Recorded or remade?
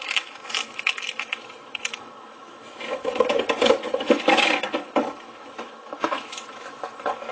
remade